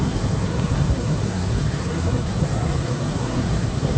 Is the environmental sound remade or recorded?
remade